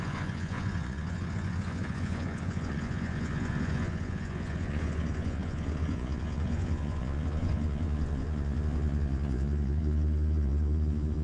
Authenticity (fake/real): fake